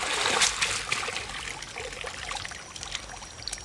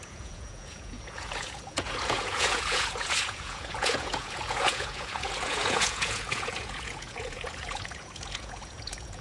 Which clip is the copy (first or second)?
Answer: second